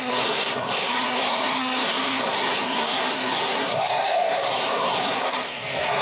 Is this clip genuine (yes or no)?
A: no